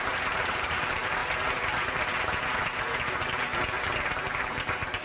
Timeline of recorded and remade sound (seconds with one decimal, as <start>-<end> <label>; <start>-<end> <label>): 0.0-1.2 remade; 1.2-3.1 recorded; 3.1-3.5 remade; 3.5-4.0 recorded; 4.0-5.0 remade